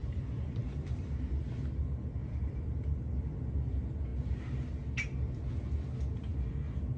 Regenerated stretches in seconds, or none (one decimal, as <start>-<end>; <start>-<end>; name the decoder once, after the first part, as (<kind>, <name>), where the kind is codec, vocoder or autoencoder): 0.0-1.4 (vocoder, BigVGAN v2); 2.2-3.4